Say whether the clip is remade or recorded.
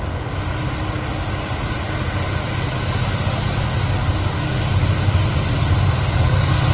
recorded